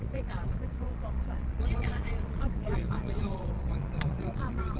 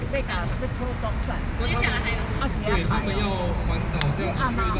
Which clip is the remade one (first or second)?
first